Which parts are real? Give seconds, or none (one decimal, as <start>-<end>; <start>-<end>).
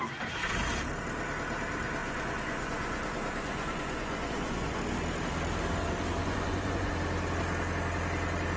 0.0-2.0; 4.8-6.2; 6.9-8.6